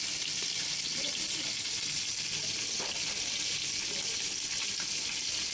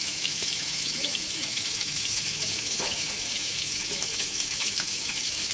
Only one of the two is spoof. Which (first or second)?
second